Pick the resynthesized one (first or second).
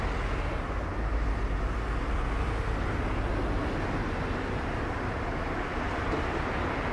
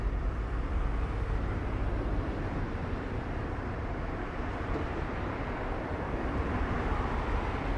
second